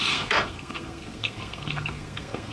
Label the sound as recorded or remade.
remade